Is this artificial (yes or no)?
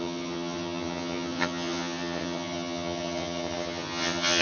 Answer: yes